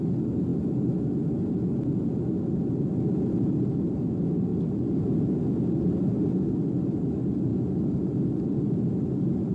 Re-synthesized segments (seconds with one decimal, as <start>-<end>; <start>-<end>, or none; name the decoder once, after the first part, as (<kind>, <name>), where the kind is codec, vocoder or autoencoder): 7.5-9.5 (vocoder, BigVGAN v2)